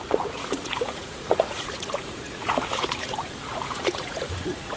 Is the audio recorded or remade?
remade